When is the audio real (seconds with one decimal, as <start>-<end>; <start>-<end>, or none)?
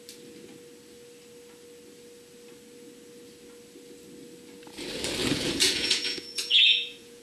0.0-5.2